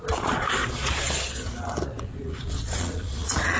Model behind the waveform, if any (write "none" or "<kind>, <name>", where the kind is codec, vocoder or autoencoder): vocoder, Vocos